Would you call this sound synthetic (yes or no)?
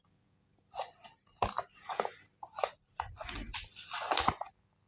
no